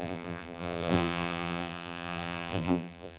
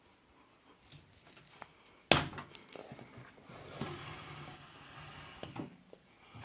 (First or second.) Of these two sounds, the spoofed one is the first